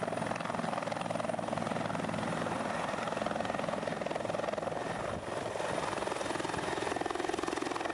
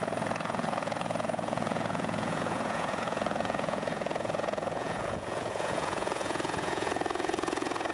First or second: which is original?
first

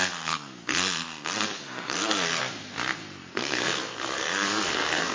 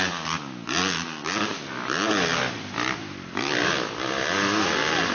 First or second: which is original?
second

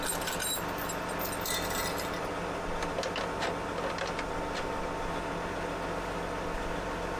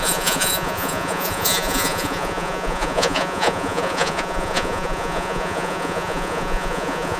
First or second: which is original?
first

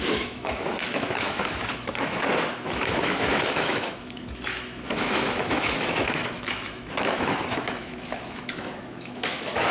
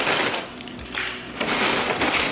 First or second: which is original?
second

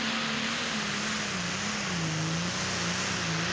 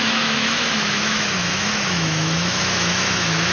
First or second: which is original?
first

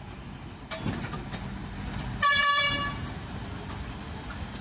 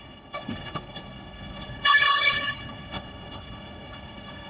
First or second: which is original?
first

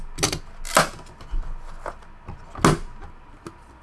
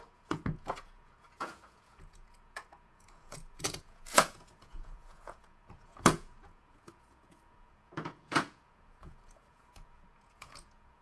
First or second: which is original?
first